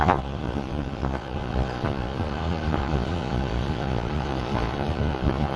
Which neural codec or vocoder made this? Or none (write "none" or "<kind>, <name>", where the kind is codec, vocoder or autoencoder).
vocoder, Vocos